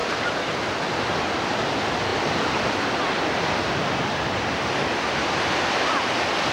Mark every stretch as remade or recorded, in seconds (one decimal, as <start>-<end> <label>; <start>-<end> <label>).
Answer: 0.0-6.5 recorded